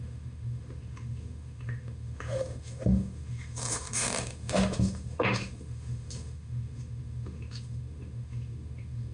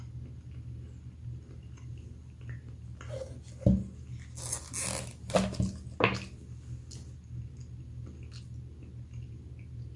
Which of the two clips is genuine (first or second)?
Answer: second